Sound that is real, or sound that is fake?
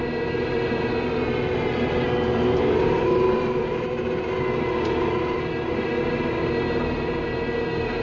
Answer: real